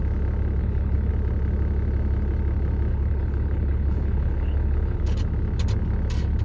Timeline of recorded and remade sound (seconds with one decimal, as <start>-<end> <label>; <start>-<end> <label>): 0.0-0.6 recorded; 0.6-1.1 remade; 1.1-2.9 recorded; 2.9-5.2 remade; 5.2-6.4 recorded